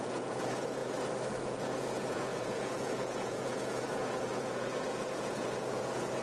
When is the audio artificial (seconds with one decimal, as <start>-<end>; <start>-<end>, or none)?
0.0-0.8; 1.4-6.2